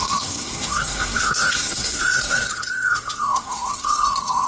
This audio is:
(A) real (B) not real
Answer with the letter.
B